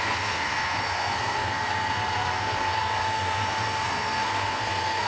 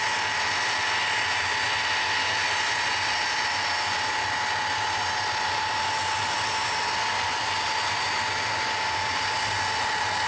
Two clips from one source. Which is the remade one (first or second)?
first